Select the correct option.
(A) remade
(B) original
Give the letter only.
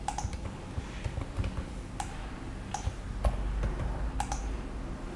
B